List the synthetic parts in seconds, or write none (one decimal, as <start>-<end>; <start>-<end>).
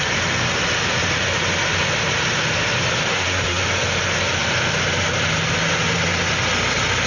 3.1-3.6